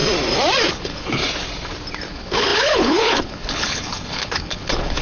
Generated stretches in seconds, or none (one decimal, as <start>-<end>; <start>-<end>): 0.7-1.2; 2.1-5.0